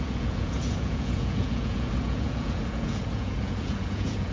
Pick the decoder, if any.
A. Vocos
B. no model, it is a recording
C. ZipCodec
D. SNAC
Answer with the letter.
A